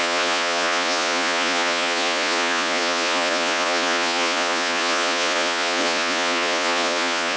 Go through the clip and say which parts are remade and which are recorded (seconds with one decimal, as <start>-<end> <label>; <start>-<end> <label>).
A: 0.0-7.4 remade